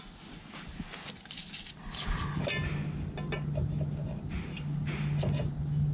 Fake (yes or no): no